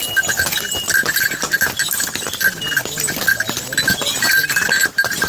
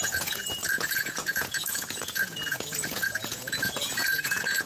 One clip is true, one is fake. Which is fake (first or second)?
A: second